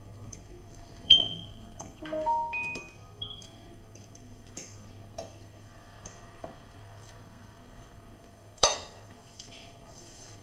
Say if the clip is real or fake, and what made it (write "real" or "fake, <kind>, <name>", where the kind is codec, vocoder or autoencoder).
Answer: fake, codec, SNAC